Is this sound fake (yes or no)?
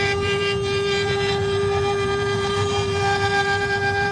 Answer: yes